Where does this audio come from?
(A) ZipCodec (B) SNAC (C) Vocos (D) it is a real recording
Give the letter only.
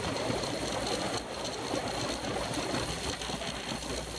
D